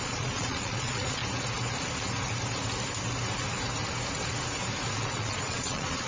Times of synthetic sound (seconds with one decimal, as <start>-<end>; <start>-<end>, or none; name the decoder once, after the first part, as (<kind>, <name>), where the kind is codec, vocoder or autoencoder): 0.0-1.2 (vocoder, Vocos); 4.9-6.1